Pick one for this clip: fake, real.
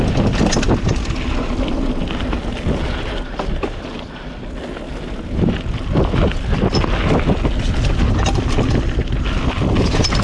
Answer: real